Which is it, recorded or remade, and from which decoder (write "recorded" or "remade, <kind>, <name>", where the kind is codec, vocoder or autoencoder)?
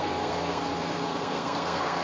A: remade, codec, SNAC